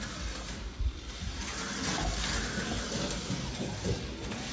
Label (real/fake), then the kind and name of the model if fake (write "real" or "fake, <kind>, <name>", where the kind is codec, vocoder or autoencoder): real